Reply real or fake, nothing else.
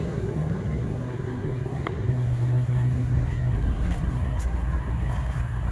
fake